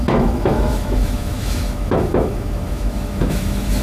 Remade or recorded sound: remade